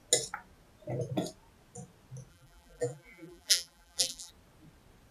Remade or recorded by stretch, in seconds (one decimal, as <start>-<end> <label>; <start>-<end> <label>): 0.0-2.3 recorded; 2.3-4.3 remade; 4.3-5.1 recorded